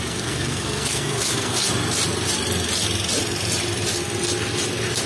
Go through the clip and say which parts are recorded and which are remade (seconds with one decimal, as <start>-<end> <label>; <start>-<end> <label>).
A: 0.0-1.6 remade; 1.6-5.1 recorded